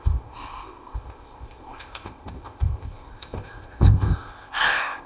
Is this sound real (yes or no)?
no